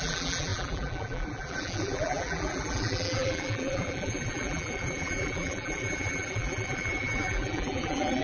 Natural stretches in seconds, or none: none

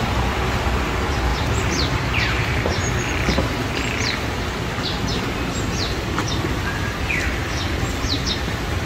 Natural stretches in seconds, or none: 0.0-1.3; 3.5-8.9

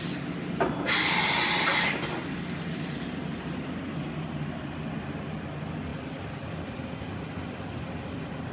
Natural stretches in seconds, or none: 0.0-5.9